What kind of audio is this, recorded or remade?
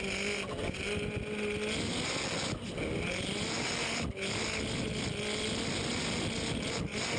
recorded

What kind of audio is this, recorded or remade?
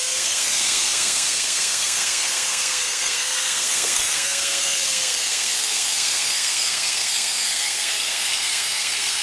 remade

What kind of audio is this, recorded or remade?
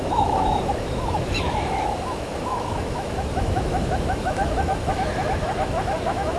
remade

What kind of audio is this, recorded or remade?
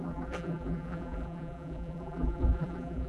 remade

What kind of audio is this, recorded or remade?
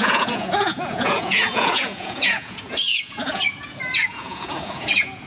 remade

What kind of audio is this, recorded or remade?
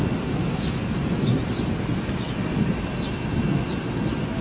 recorded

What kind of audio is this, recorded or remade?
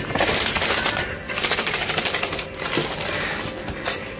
recorded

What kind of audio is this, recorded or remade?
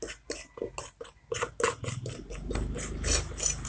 recorded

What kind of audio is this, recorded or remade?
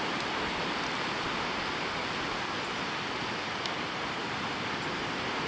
recorded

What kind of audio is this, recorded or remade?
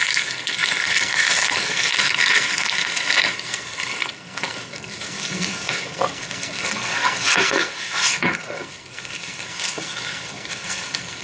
remade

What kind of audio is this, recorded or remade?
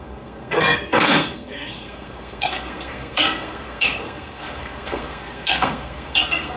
remade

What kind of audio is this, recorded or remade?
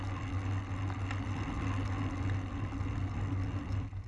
recorded